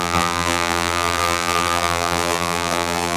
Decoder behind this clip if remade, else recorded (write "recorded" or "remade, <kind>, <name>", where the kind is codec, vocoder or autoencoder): remade, vocoder, BigVGAN v2